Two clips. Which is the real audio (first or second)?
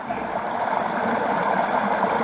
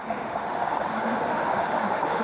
first